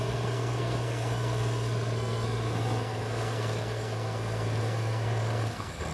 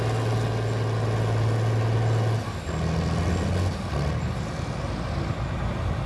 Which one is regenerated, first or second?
first